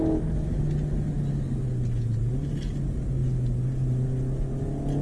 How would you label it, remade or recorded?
recorded